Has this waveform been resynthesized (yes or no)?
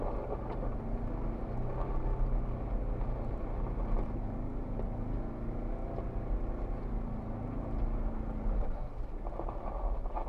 no